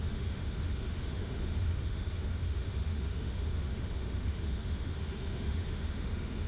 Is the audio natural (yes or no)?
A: no